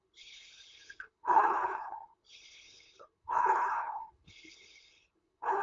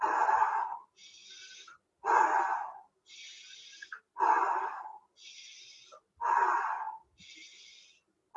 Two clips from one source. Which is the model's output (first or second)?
first